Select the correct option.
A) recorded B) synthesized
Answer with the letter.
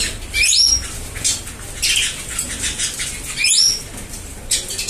A